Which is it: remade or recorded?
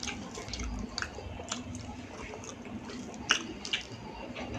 recorded